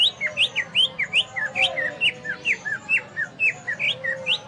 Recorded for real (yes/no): yes